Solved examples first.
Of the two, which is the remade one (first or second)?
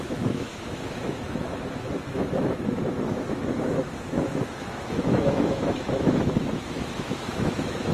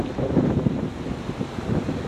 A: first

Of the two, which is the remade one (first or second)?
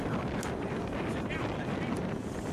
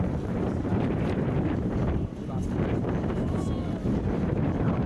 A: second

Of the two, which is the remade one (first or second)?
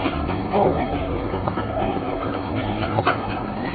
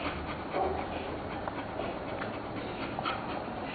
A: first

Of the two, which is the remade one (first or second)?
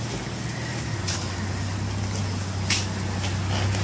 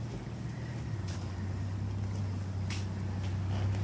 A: second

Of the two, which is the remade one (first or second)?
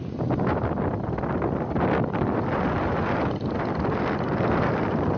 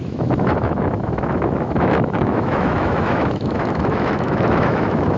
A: second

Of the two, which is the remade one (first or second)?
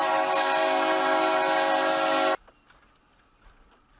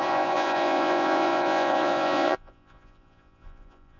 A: second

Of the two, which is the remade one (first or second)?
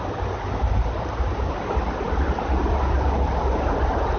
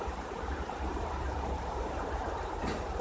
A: second